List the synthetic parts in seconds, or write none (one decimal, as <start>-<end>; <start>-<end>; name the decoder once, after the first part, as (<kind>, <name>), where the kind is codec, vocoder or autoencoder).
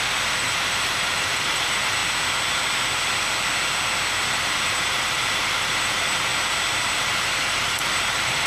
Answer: 0.0-2.0 (vocoder, BigVGAN v2); 4.3-6.3; 6.9-8.5